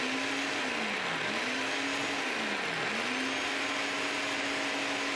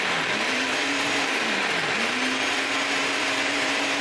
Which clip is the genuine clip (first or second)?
first